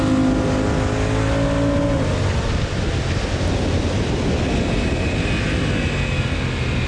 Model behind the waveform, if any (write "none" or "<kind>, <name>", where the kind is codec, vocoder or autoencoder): none